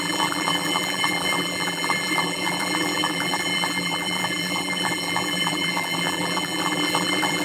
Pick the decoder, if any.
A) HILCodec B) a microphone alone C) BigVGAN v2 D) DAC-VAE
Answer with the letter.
C